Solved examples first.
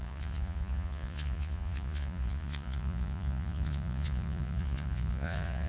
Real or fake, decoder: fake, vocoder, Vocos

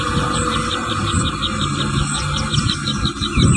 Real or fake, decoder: real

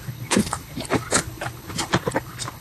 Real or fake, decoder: fake, codec, HILCodec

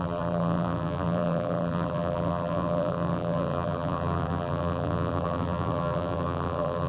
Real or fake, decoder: fake, vocoder, BigVGAN v2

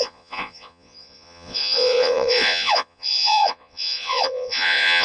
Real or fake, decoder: fake, vocoder, Vocos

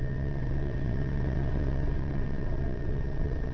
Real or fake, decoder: fake, vocoder, WaveNeXt